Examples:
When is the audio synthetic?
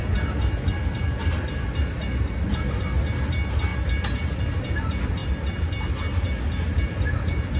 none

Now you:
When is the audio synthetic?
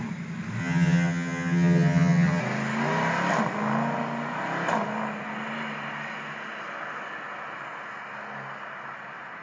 0.6-2.4 (vocoder, HiFi-GAN)